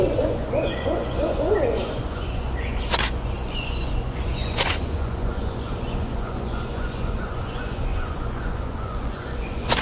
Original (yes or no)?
no